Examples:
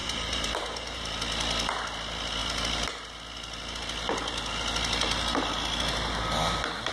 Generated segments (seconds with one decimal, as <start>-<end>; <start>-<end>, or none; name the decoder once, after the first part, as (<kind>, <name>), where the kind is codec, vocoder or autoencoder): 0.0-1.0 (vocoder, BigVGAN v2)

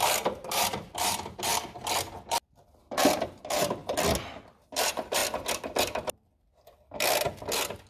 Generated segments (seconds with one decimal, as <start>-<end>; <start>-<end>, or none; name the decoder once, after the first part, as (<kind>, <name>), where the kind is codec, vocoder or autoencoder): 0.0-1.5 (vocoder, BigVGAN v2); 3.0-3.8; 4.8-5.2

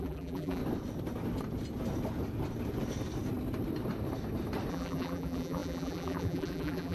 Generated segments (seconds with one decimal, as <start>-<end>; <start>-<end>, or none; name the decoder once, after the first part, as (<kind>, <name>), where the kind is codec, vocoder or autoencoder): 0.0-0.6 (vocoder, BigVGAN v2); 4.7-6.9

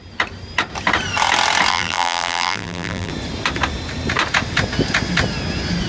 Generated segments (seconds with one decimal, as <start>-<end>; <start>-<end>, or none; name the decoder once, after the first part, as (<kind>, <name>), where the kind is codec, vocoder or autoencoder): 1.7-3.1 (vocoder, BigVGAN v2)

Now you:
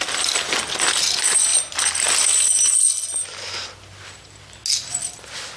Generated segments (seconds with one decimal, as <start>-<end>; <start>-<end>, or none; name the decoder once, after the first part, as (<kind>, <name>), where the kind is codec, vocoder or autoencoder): none